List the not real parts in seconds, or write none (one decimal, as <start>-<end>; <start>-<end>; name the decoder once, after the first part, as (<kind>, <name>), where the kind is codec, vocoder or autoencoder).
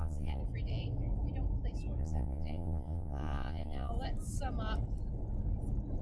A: 0.0-0.4 (vocoder, Vocos); 2.0-3.9